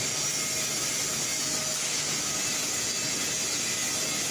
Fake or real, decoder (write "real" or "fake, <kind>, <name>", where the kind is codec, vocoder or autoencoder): real